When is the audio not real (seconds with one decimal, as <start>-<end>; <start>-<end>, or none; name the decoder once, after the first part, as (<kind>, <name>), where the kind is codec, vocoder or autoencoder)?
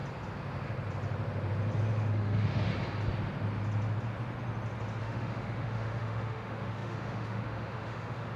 2.1-2.7 (autoencoder, DAC-VAE); 5.0-8.4